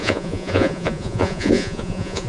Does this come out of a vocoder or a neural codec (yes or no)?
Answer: yes